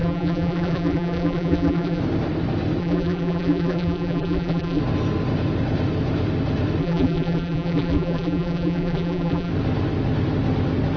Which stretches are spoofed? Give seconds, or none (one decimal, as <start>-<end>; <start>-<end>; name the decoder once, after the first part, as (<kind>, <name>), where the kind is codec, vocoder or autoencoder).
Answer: 0.0-2.0 (vocoder, BigVGAN v2); 2.8-4.8; 6.8-9.5